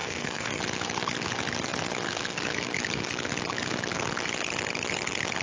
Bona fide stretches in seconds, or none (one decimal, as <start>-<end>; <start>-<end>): 0.6-5.4